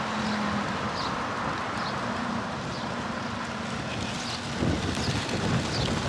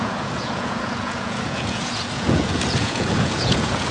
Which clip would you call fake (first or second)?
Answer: second